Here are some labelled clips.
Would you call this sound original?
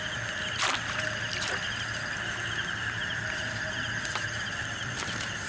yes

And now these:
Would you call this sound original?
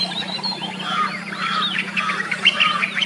no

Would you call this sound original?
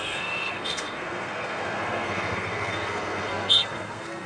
no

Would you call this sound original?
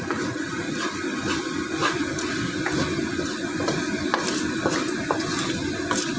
yes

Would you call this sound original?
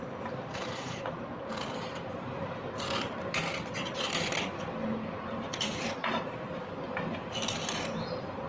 no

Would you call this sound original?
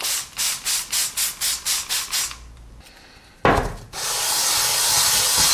yes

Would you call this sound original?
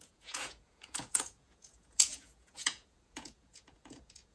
no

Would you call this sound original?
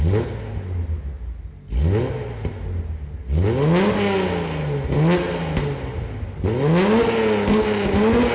yes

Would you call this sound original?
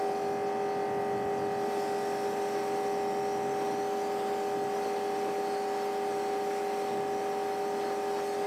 yes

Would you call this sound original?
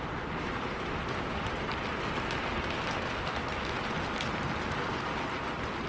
yes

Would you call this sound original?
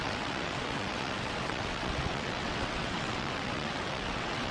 no